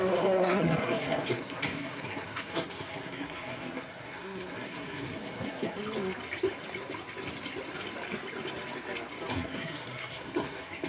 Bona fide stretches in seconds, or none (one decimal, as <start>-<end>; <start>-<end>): 5.8-9.3